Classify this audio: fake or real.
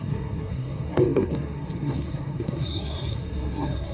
fake